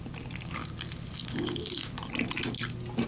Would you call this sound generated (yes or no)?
no